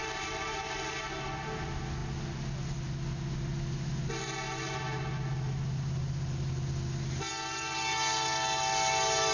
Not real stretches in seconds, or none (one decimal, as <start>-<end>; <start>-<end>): none